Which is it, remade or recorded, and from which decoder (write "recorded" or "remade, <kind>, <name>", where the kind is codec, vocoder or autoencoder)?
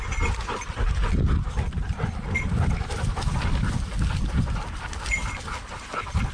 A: remade, vocoder, BigVGAN v2